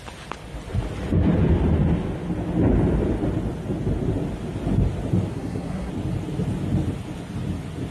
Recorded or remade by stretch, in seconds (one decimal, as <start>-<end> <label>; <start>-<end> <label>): 0.0-5.3 recorded; 5.3-5.9 remade; 5.9-7.9 recorded